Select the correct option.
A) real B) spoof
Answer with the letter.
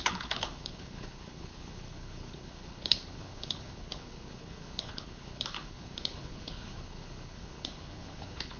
B